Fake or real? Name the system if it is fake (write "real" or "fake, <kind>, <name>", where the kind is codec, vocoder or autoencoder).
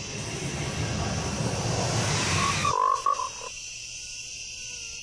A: real